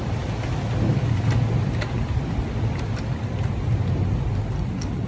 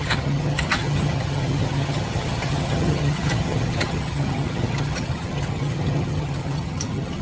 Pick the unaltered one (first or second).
first